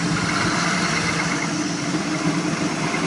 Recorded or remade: recorded